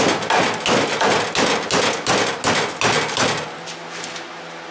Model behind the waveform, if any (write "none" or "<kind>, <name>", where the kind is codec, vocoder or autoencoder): none